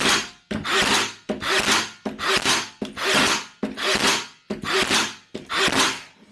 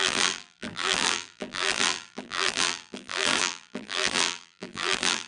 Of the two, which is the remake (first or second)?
second